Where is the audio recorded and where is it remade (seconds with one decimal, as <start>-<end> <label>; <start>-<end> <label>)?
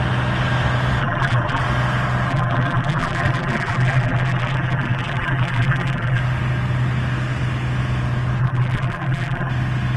0.0-1.0 recorded; 1.0-1.6 remade; 1.6-2.3 recorded; 2.3-6.2 remade; 6.2-8.4 recorded; 8.4-9.5 remade; 9.5-10.0 recorded